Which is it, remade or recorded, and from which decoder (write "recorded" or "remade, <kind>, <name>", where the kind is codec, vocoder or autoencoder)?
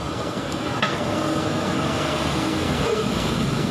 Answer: remade, codec, SNAC